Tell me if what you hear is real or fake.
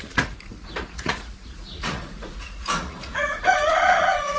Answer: fake